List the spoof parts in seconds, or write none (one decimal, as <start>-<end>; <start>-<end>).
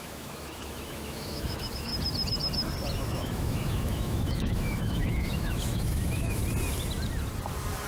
0.0-1.9; 3.0-6.4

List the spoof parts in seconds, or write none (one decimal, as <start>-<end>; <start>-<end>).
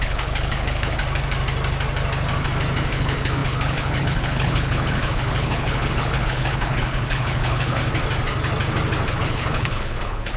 0.0-1.0; 2.9-7.8; 9.1-10.4